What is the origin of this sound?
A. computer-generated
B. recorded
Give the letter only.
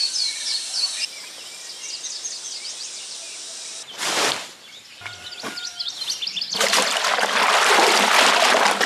B